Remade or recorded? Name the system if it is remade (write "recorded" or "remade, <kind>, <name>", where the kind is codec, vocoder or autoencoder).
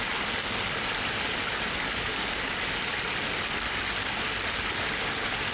recorded